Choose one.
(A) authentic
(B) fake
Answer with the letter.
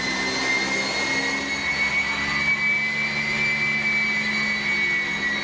A